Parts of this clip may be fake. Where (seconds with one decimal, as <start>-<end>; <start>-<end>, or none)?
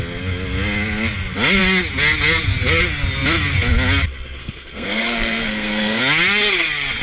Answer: 4.4-6.0